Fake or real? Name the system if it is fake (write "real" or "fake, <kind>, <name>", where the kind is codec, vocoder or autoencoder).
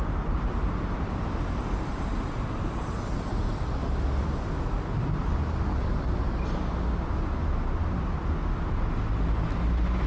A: real